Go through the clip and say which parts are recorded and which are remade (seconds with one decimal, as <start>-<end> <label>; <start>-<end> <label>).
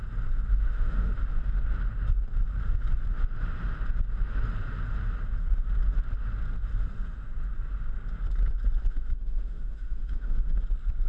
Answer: 0.0-0.5 recorded; 0.5-1.1 remade; 1.1-8.9 recorded; 8.9-10.6 remade; 10.6-11.1 recorded